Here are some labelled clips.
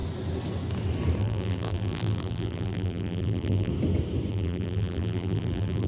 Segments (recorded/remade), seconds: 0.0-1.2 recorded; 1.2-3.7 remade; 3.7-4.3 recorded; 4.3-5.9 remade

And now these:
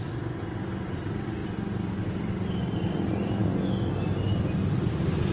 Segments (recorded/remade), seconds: 0.0-5.3 recorded

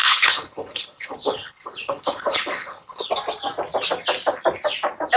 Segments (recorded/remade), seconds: 0.0-3.1 remade; 3.1-5.2 recorded

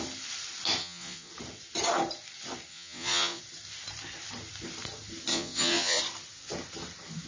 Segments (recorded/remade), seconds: 0.0-0.8 recorded; 0.8-1.3 remade; 1.3-2.7 recorded; 2.7-3.4 remade; 3.4-5.3 recorded; 5.3-6.0 remade; 6.0-7.3 recorded

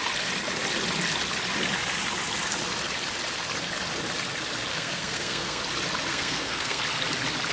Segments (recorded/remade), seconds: 0.0-4.7 recorded; 4.7-5.6 remade; 5.6-6.1 recorded; 6.1-6.8 remade; 6.8-7.5 recorded

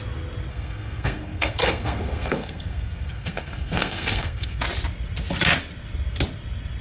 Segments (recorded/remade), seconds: 0.0-0.5 recorded; 0.5-4.6 remade; 4.6-6.8 recorded

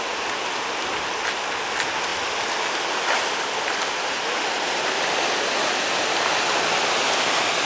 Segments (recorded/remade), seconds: 0.0-7.7 recorded

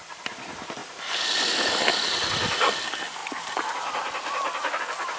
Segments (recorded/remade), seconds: 0.0-5.2 recorded